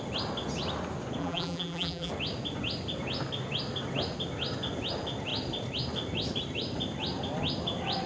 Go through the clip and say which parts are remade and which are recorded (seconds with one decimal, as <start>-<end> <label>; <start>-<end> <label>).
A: 0.0-1.2 recorded; 1.2-2.1 remade; 2.1-8.1 recorded

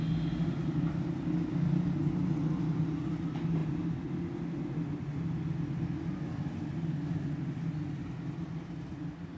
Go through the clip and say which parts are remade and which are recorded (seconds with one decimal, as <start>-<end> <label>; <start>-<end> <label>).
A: 0.0-9.4 recorded